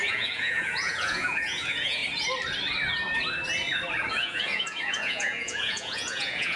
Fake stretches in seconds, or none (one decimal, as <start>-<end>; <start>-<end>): 0.0-2.0; 4.1-6.6